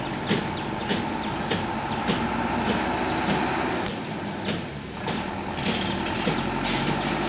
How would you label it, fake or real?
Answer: real